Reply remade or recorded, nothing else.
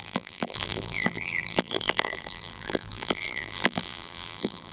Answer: remade